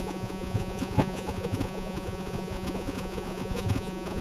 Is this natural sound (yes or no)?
no